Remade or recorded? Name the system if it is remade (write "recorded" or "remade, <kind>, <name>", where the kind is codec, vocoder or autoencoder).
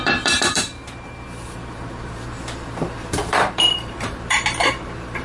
remade, vocoder, BigVGAN v2